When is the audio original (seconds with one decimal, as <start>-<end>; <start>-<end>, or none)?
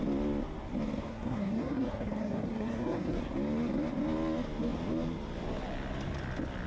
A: 0.0-1.1; 3.2-6.7